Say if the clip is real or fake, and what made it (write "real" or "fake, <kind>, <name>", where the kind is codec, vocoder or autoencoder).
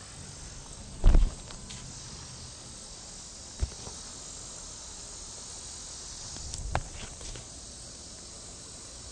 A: real